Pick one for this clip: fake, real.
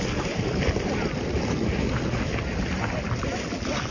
real